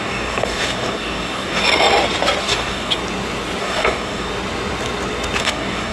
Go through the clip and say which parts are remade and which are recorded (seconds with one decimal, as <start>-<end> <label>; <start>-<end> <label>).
0.0-1.6 remade; 1.6-2.4 recorded; 2.4-3.0 remade; 3.0-3.6 recorded; 3.6-4.3 remade; 4.3-5.4 recorded; 5.4-5.9 remade

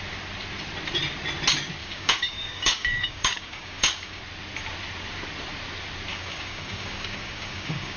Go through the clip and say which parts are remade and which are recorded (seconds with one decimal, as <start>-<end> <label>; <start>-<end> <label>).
0.0-1.8 recorded; 1.8-4.2 remade; 4.2-6.1 recorded; 6.1-8.0 remade

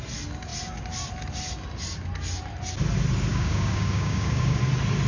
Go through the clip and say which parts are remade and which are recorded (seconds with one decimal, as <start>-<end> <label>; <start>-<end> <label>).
0.0-3.3 recorded; 3.3-4.6 remade; 4.6-5.1 recorded

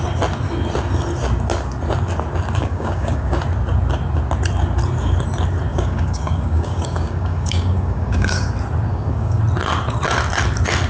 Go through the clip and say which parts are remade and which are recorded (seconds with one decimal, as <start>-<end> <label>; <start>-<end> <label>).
0.0-2.6 recorded; 2.6-3.4 remade; 3.4-5.7 recorded; 5.7-8.5 remade; 8.5-8.9 recorded; 8.9-9.4 remade; 9.4-10.9 recorded